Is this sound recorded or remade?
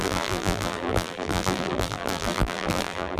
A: remade